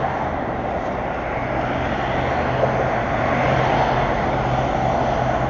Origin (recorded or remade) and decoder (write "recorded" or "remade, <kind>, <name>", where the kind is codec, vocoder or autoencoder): recorded